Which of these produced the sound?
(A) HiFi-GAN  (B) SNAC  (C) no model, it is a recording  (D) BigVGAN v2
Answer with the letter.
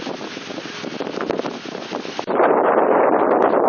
C